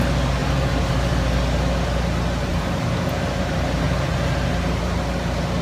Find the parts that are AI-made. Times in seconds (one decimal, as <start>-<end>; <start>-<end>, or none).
0.4-1.1; 2.5-5.0